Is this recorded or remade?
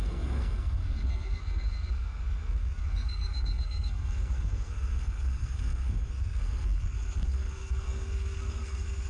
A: remade